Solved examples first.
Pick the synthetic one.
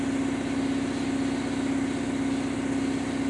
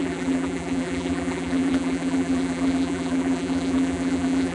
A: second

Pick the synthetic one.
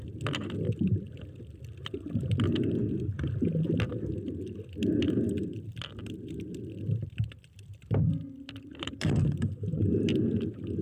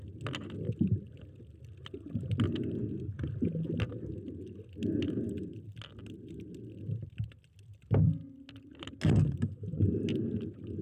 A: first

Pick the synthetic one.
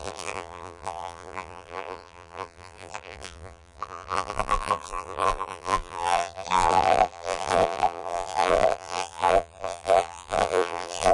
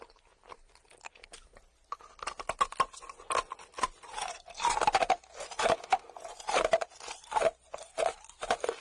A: first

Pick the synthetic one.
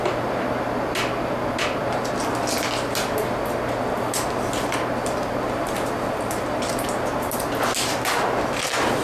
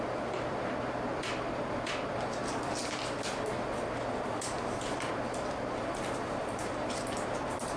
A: second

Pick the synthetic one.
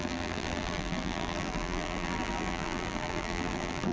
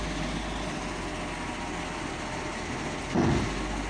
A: first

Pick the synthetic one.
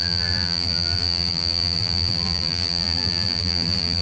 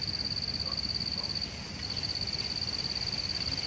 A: first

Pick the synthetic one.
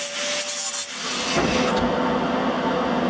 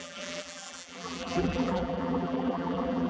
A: second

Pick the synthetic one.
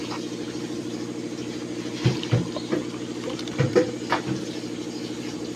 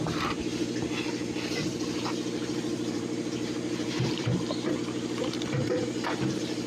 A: second